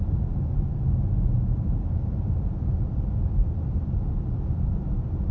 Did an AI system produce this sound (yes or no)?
no